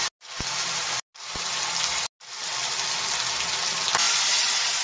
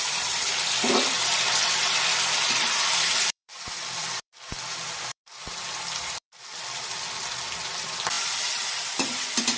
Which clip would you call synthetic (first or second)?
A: second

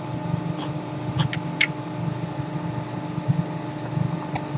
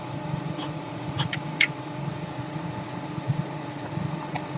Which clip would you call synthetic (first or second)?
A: second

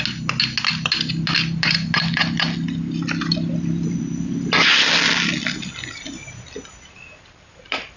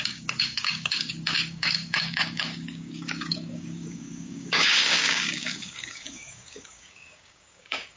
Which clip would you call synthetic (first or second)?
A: second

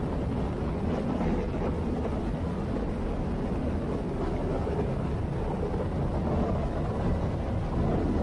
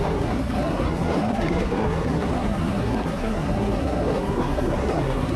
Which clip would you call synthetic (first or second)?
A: second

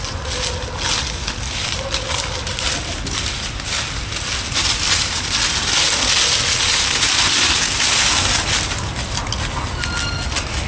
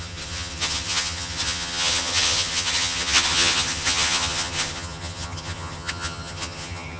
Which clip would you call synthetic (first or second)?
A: second